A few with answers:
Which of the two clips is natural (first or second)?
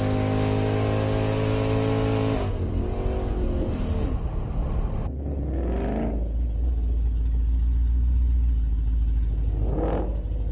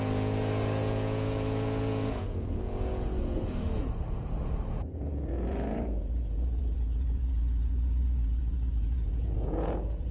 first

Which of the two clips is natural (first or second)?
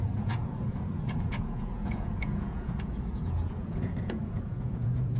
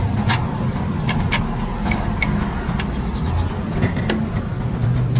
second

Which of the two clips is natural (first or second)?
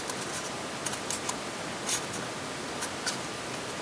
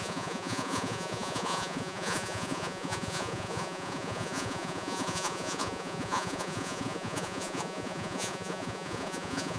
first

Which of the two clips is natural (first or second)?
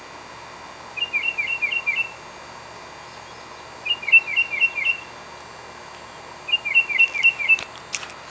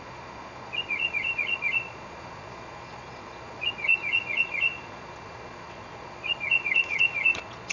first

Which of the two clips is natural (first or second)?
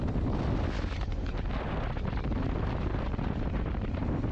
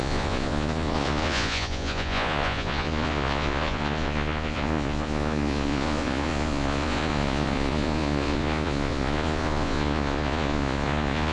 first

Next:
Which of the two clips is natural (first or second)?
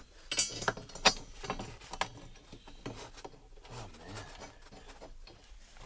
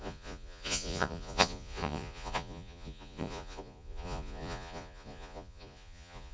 first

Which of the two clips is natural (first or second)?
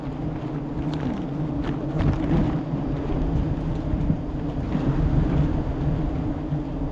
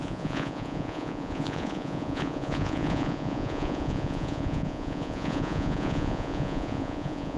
first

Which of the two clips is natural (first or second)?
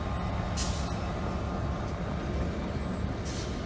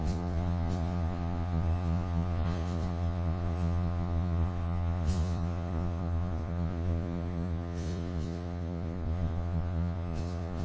first